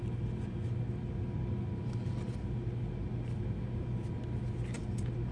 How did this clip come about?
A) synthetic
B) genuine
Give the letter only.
A